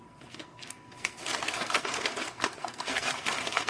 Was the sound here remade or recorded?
remade